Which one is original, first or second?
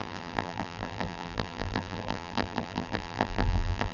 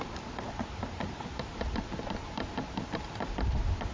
second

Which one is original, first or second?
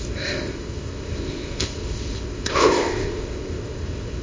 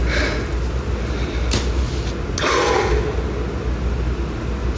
second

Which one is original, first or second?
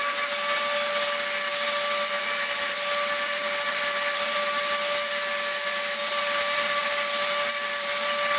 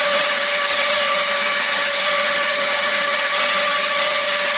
first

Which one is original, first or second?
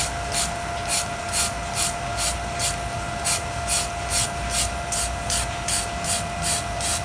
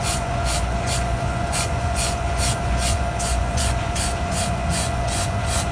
first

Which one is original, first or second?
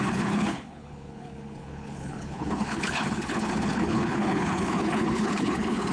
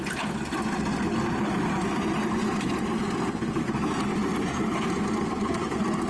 second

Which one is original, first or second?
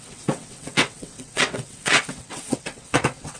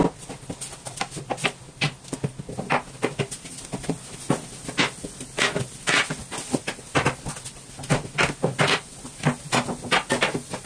second